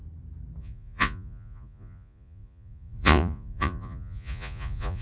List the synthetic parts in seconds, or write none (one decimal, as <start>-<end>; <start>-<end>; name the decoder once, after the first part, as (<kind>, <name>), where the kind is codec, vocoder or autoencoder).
0.6-5.0 (vocoder, Vocos)